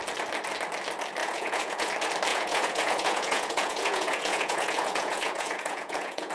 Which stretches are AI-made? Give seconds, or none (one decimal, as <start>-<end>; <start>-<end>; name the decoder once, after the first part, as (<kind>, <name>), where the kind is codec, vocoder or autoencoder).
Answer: 1.2-1.9 (vocoder, Vocos); 2.3-6.3